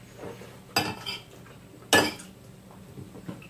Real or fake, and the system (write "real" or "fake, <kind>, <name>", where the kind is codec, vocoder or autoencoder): real